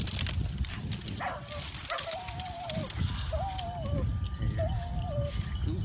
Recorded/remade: recorded